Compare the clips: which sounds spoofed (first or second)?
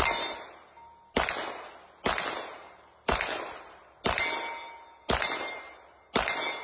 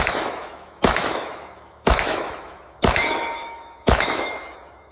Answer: second